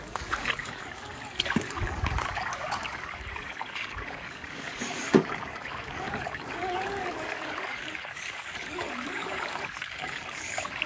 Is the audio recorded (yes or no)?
no